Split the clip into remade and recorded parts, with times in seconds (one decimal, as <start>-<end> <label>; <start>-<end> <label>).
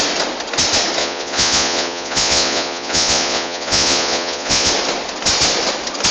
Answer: 0.0-1.0 recorded; 1.0-4.7 remade; 4.7-6.1 recorded